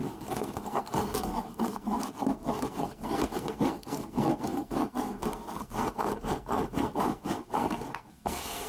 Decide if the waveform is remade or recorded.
remade